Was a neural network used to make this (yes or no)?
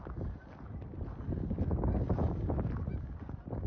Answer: no